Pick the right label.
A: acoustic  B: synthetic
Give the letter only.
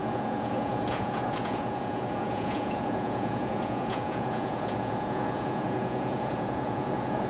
B